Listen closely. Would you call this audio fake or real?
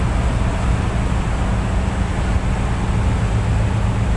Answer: real